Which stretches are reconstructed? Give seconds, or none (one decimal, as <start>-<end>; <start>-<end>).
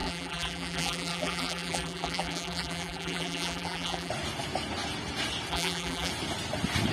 0.0-4.1; 5.5-6.1